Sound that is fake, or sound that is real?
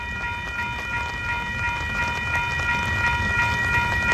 real